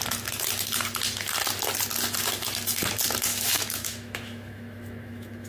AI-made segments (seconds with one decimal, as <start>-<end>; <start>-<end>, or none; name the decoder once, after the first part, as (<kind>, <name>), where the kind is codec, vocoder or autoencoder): 3.3-5.5 (autoencoder, DAC-VAE)